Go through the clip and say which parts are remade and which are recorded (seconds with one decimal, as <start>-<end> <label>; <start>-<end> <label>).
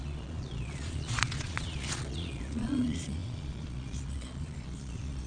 0.0-5.3 remade